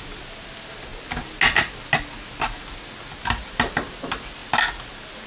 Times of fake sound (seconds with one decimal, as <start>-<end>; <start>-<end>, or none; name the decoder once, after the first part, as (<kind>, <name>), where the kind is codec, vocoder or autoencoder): none